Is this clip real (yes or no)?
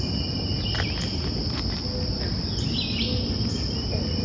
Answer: yes